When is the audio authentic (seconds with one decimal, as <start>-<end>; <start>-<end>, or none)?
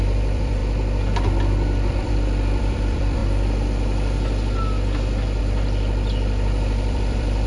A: 0.6-1.9; 3.2-5.4